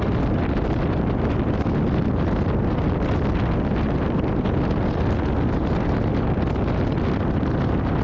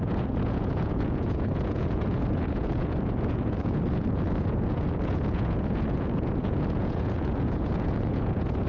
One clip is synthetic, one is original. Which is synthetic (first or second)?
second